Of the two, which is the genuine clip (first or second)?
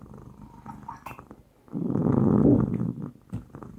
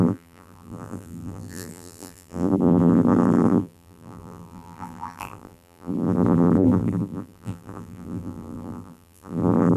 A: first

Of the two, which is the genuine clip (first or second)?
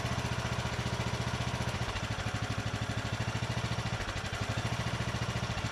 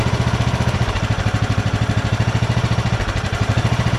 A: first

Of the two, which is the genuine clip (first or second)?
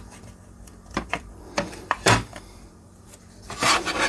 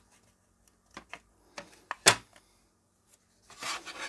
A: second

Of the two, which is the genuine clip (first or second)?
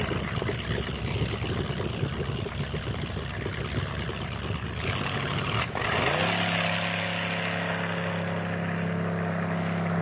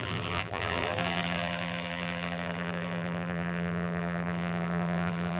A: first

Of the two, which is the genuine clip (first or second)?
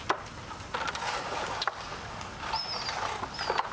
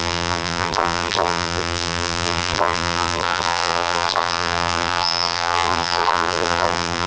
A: first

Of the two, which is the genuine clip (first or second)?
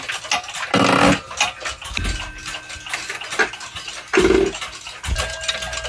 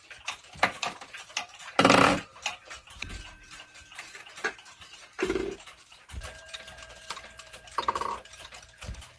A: first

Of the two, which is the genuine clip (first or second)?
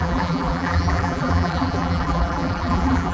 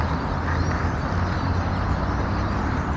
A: second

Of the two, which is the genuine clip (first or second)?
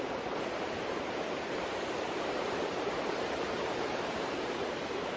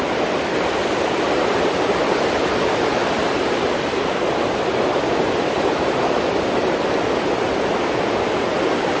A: second